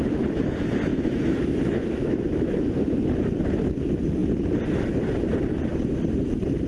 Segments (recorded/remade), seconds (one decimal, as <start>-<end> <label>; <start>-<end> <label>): 0.0-0.9 recorded; 0.9-3.1 remade; 3.1-6.7 recorded